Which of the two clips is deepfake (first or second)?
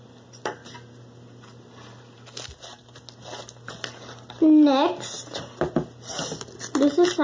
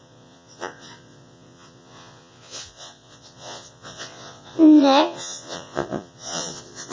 second